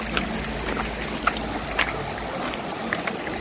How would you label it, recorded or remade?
recorded